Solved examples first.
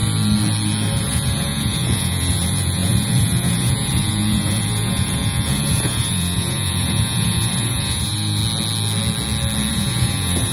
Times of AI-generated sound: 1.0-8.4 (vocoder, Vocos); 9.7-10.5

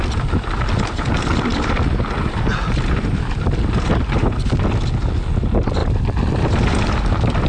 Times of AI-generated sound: none

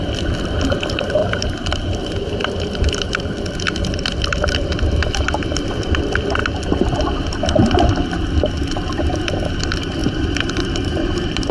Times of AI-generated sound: 1.2-3.3 (vocoder, BigVGAN v2); 10.0-11.5

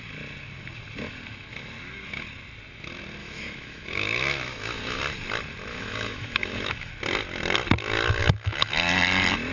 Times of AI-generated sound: 3.2-5.0 (autoencoder, DAC-VAE); 5.7-6.9; 8.2-8.7

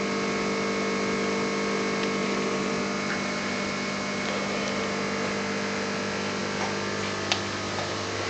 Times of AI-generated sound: 2.2-2.7 (vocoder, BigVGAN v2)